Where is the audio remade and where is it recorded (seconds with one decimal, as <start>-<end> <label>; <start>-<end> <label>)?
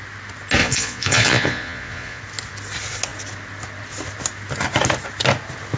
0.0-0.6 recorded; 0.6-2.2 remade; 2.2-5.8 recorded